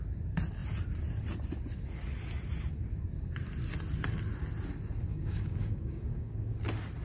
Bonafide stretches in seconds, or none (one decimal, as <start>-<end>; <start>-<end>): 0.0-5.1; 6.6-7.0